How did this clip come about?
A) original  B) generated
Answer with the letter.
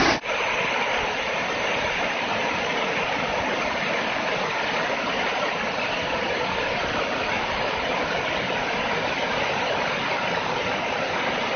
A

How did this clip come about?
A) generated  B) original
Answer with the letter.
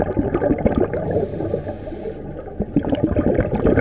B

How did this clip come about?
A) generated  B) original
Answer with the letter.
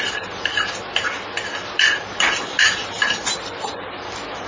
B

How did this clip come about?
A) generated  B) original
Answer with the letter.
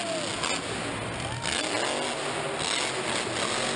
B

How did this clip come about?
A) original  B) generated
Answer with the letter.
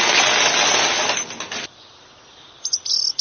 A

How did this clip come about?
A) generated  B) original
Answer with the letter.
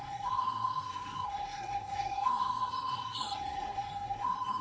A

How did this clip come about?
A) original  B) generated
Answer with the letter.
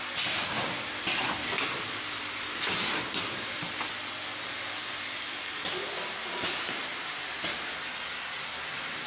A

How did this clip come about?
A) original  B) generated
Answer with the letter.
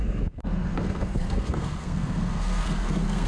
B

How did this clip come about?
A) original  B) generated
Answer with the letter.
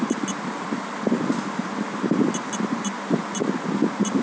A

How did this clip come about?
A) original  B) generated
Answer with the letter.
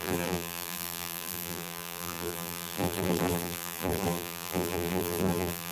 B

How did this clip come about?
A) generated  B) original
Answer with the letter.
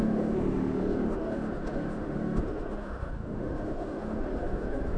A